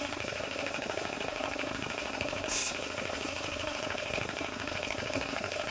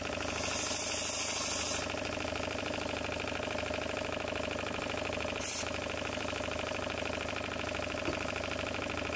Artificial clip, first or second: first